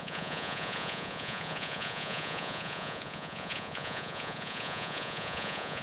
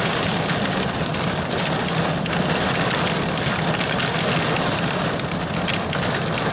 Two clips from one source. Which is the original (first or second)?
second